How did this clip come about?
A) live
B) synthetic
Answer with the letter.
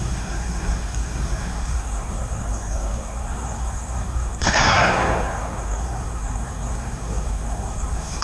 B